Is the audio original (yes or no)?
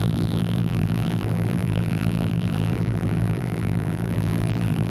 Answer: no